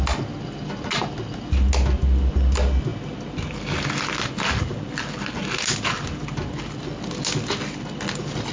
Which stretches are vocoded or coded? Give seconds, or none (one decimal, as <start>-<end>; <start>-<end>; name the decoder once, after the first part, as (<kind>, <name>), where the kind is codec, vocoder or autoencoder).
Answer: none